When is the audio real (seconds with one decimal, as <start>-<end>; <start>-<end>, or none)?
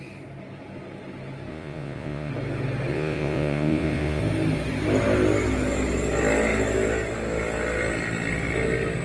0.0-1.5; 2.3-2.9; 4.2-9.0